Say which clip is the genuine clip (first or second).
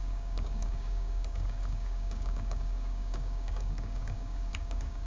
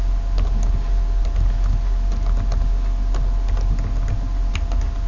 second